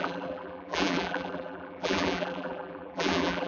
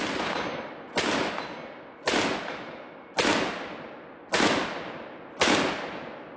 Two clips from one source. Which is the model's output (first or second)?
first